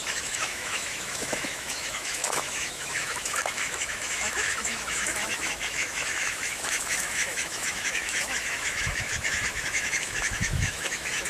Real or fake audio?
fake